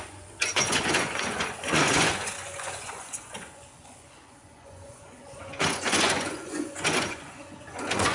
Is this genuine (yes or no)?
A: no